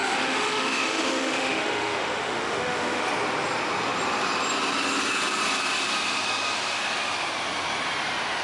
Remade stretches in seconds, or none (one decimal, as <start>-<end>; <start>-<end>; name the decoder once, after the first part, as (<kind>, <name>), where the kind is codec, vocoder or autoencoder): 0.0-3.0 (autoencoder, DAC-VAE)